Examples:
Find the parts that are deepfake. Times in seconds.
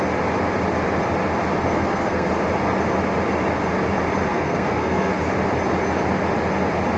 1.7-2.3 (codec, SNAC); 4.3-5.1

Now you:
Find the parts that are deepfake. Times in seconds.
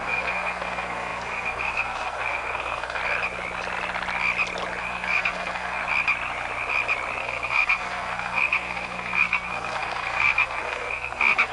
0.0-3.0 (codec, SNAC); 4.8-5.8; 7.2-11.5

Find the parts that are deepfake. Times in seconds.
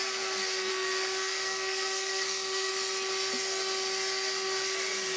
0.7-2.7 (codec, SNAC)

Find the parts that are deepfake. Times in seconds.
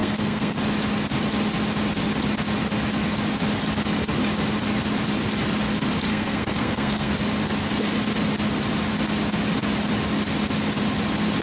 0.0-0.6 (codec, SNAC); 6.1-7.1